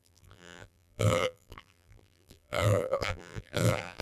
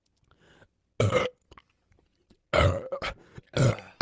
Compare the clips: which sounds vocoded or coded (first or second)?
first